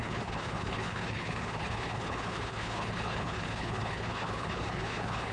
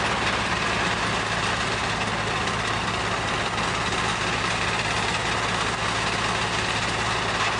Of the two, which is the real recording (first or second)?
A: second